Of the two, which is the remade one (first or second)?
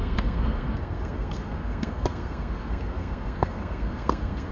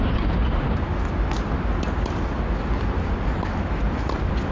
first